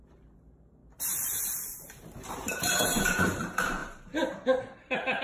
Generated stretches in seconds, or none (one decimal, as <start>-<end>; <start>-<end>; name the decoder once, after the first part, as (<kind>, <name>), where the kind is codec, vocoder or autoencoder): 0.0-5.2 (vocoder, BigVGAN v2)